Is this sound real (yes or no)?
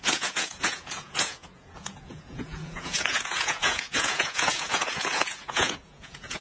no